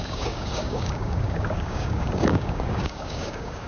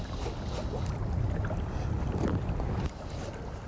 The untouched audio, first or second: second